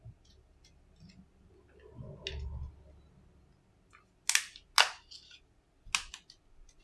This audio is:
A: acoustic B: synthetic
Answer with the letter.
A